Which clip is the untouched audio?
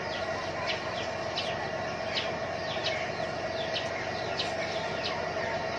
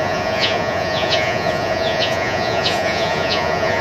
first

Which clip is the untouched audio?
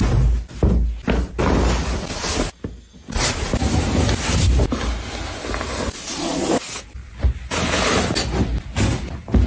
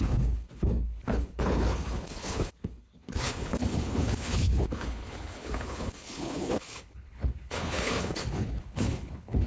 first